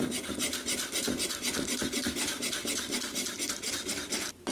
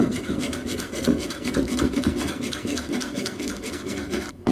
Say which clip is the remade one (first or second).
second